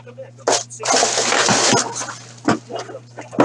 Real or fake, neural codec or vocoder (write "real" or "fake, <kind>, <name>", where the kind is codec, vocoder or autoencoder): real